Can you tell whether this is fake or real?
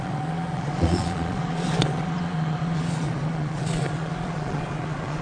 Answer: fake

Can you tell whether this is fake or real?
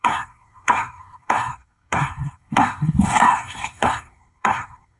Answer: fake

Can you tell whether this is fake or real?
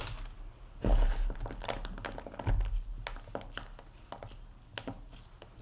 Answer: real